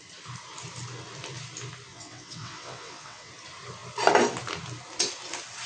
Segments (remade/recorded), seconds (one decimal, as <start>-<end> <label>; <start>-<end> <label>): 0.0-1.9 recorded; 1.9-3.3 remade; 3.3-5.7 recorded

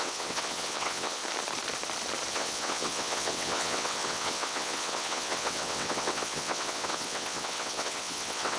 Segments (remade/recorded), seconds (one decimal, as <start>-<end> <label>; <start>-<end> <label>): 0.0-1.2 remade; 1.2-2.3 recorded; 2.3-8.6 remade

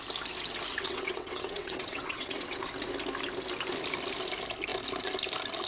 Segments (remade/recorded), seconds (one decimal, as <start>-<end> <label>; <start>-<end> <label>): 0.0-0.7 recorded; 0.7-2.7 remade; 2.7-5.7 recorded

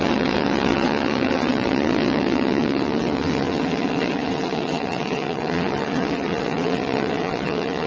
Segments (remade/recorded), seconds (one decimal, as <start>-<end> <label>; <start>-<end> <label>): 0.0-7.9 remade

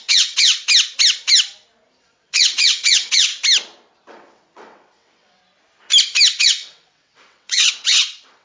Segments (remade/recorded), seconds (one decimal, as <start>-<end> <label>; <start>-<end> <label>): 0.0-0.5 remade; 0.5-2.0 recorded; 2.0-3.3 remade; 3.3-4.1 recorded; 4.1-5.4 remade; 5.4-6.4 recorded; 6.4-8.4 remade

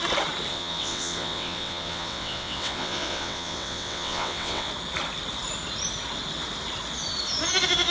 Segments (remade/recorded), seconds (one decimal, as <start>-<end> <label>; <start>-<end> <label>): 0.0-0.5 recorded; 0.5-4.7 remade; 4.7-7.9 recorded

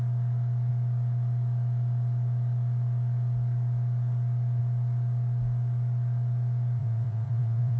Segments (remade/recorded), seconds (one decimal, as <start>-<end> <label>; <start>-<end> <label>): 0.0-6.8 recorded; 6.8-7.8 remade

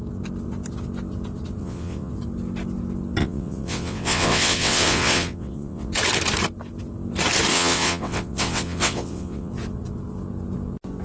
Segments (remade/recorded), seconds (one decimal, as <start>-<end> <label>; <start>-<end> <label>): 0.0-1.6 recorded; 1.6-2.1 remade; 2.1-3.2 recorded; 3.2-5.9 remade; 5.9-7.5 recorded; 7.5-9.5 remade; 9.5-11.0 recorded